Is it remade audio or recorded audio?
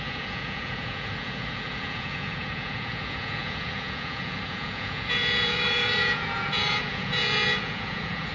remade